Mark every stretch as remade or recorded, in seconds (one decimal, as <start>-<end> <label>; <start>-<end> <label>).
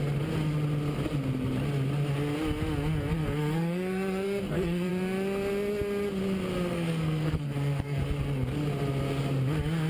0.0-3.1 recorded; 3.1-4.9 remade; 4.9-6.7 recorded; 6.7-8.0 remade; 8.0-9.9 recorded